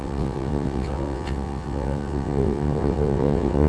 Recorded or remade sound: remade